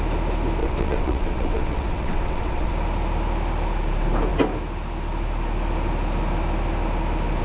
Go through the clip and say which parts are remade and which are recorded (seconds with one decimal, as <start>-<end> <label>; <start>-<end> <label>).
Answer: 0.0-0.6 recorded; 0.6-2.7 remade; 2.7-7.4 recorded